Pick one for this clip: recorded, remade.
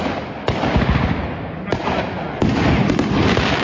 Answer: recorded